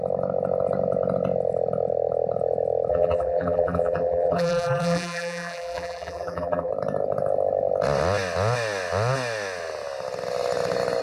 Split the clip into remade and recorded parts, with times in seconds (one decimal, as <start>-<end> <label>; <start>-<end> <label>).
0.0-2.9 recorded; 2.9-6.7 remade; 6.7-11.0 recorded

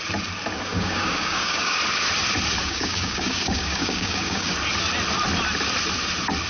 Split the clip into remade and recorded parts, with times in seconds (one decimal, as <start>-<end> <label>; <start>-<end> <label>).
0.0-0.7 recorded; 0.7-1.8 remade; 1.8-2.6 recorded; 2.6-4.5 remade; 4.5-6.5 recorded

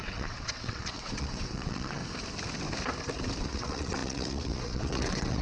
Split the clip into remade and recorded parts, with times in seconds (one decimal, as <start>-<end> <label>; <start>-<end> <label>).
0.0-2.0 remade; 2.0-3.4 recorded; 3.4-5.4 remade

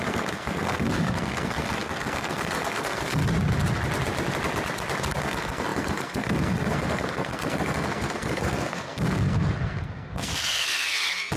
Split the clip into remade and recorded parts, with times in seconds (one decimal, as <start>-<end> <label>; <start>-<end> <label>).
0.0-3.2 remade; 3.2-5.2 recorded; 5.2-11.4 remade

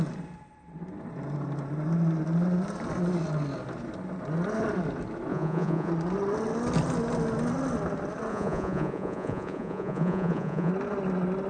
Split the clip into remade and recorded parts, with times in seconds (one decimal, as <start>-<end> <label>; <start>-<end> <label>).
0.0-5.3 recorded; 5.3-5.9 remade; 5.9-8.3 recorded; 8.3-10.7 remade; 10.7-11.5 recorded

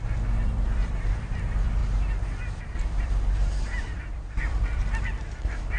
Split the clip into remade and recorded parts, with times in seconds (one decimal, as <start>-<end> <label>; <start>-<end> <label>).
0.0-1.8 remade; 1.8-2.6 recorded; 2.6-5.8 remade

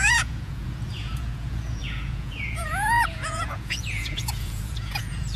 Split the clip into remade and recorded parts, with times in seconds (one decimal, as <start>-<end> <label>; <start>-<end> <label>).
0.0-5.4 remade

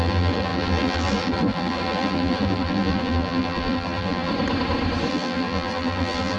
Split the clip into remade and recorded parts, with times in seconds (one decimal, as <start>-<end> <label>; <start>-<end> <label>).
0.0-4.3 remade; 4.3-5.1 recorded; 5.1-6.4 remade